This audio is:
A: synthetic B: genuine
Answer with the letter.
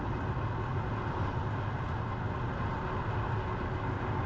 B